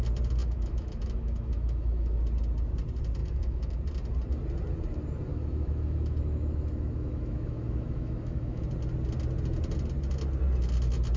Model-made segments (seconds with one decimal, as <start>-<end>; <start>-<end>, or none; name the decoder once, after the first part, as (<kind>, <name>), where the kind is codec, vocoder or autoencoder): 0.4-2.2 (autoencoder, DAC-VAE); 3.2-3.8; 5.3-8.6